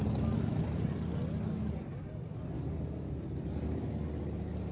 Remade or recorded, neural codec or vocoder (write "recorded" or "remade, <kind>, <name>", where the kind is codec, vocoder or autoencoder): recorded